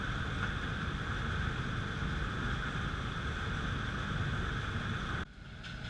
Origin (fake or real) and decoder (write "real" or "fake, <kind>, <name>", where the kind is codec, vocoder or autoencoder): real